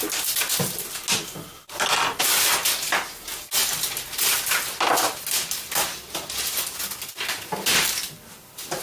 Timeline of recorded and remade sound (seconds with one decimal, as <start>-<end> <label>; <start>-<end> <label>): 0.0-8.8 recorded